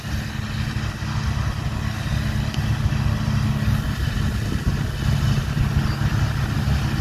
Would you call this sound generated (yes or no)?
no